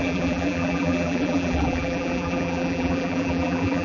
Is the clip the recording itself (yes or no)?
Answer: no